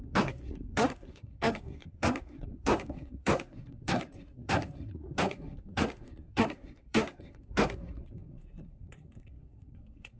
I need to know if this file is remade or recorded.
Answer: remade